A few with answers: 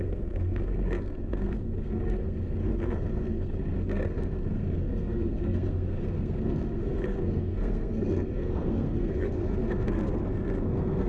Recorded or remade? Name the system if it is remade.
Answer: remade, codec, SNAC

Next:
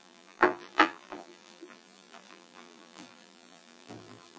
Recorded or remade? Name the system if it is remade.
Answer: remade, vocoder, BigVGAN v2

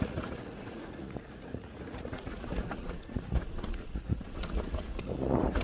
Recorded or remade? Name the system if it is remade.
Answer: remade, vocoder, Vocos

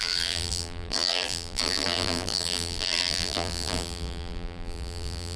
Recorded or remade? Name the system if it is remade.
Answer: remade, vocoder, BigVGAN v2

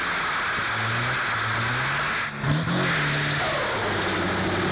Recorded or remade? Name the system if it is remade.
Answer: recorded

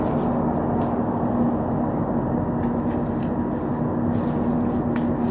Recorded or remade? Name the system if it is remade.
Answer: recorded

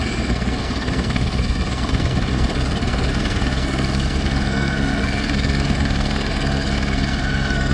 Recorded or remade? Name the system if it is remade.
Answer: remade, codec, SNAC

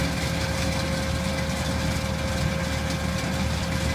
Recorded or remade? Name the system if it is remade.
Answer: recorded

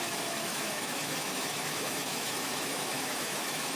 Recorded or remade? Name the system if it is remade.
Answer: remade, autoencoder, DAC-VAE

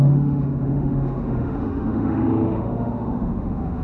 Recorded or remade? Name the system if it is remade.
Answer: remade, autoencoder, DAC-VAE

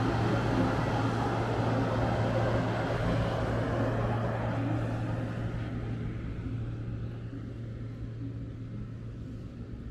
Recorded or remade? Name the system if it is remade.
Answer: recorded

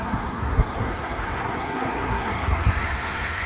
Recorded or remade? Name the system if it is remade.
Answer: remade, codec, SNAC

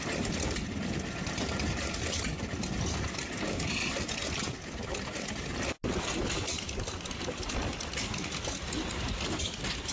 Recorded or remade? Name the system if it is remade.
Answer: recorded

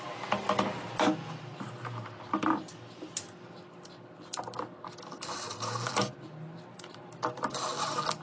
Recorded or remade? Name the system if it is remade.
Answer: recorded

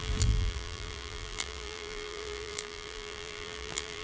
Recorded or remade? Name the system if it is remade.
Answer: remade, vocoder, BigVGAN v2